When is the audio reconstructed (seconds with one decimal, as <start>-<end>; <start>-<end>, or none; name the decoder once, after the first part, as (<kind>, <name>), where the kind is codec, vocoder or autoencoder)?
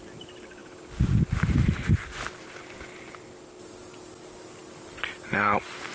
none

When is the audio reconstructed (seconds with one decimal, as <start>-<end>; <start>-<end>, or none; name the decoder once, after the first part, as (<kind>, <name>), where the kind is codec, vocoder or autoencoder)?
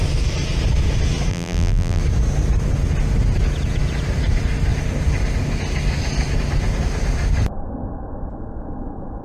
1.3-2.0 (vocoder, BigVGAN v2)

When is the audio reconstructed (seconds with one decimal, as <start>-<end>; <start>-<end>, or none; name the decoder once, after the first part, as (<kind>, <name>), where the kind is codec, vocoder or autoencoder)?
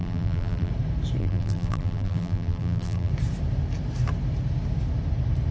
0.0-0.7 (vocoder, BigVGAN v2); 1.2-3.1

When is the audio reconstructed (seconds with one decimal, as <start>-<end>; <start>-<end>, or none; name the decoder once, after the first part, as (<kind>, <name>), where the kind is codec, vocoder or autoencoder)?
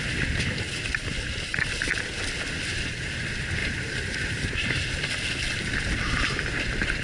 3.6-5.1 (vocoder, BigVGAN v2)